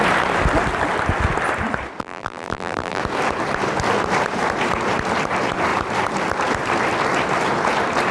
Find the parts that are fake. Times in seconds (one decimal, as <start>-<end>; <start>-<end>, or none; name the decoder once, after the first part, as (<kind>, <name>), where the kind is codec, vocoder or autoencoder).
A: 2.0-3.0 (vocoder, BigVGAN v2)